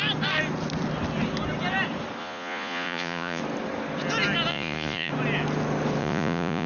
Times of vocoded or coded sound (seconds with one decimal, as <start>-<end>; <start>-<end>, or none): 2.2-3.4; 4.5-5.1; 6.0-6.7